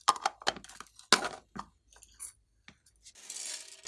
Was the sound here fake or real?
real